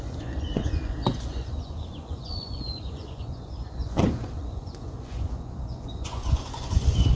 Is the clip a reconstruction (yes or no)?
yes